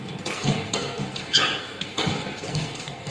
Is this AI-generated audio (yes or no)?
yes